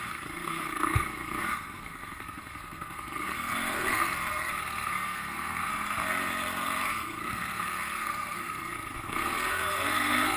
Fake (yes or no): yes